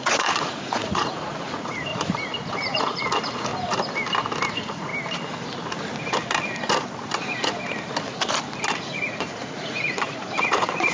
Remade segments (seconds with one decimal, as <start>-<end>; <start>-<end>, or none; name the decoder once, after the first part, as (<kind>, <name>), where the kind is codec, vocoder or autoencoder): 0.0-1.9 (vocoder, Vocos); 2.5-3.5; 4.5-4.9; 8.8-10.9